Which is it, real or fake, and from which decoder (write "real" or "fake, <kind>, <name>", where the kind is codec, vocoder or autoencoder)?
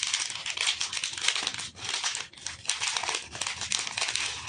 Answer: real